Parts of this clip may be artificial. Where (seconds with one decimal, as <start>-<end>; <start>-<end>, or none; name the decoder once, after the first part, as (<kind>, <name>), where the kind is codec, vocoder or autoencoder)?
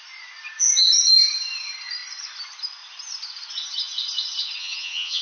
4.6-5.2 (vocoder, HiFi-GAN)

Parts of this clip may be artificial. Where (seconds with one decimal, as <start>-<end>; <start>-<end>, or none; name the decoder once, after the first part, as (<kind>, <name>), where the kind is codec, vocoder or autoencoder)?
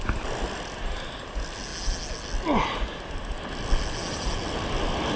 none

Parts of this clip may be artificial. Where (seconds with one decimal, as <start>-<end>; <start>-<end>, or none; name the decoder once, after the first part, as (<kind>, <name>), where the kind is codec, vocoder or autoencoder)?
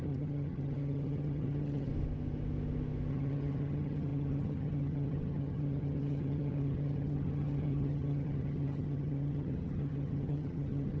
0.0-1.9 (vocoder, HiFi-GAN); 3.1-11.0